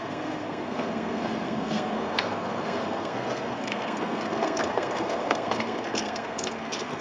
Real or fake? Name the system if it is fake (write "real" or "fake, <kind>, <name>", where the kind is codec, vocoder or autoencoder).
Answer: fake, codec, SNAC